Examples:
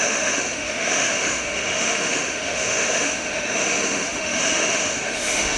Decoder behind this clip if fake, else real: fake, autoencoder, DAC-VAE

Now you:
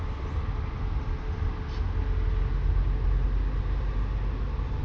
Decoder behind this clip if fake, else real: real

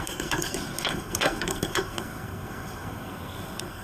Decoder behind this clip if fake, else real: fake, codec, SNAC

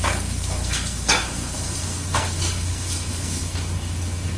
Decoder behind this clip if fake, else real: fake, codec, SNAC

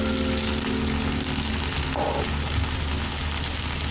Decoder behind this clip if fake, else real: real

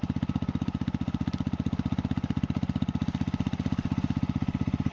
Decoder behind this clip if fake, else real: real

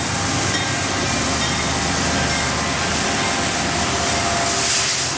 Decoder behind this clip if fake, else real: real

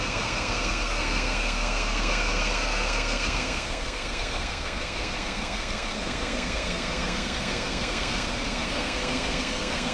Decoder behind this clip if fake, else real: fake, codec, SNAC